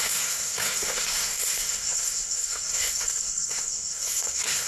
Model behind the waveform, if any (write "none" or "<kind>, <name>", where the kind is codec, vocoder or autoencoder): codec, SNAC